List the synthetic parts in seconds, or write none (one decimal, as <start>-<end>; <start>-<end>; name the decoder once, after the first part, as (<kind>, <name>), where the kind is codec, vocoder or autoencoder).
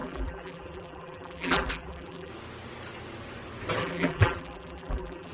0.0-2.3 (vocoder, BigVGAN v2); 3.8-5.3